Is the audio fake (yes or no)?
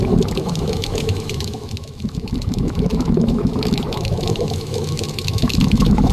yes